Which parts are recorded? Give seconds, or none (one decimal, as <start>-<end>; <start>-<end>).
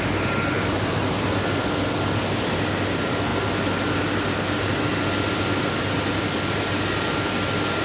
0.0-7.8